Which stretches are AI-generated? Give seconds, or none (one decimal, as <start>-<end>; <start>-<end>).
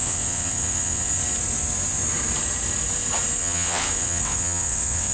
0.0-1.1; 3.4-5.1